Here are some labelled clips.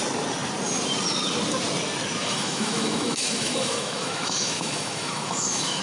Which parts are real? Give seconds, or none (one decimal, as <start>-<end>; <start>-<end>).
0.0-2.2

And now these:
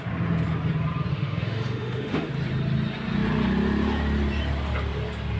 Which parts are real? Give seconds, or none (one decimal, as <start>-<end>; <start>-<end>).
0.0-1.1; 2.3-5.4

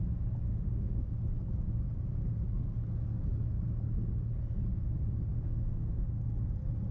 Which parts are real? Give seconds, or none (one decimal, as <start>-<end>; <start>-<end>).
0.0-0.5; 1.1-5.3; 6.1-6.9

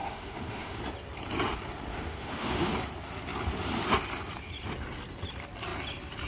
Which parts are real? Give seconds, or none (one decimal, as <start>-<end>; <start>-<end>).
0.8-1.9; 2.7-6.3